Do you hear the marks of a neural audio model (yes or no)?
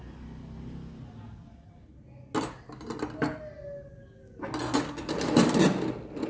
no